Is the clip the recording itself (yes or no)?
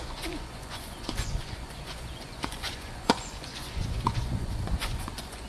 no